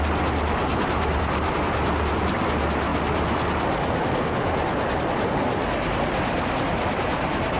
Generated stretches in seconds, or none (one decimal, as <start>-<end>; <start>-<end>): 0.7-1.6